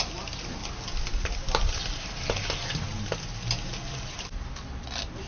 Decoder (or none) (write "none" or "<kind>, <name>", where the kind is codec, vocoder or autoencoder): none